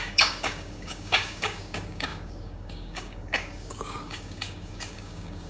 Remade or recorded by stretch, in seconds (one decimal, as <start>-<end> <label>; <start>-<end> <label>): 0.0-5.5 remade